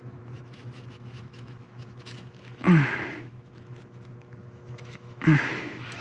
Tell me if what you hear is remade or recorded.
remade